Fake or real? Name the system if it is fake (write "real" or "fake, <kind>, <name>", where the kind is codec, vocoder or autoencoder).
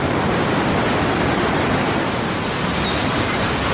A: real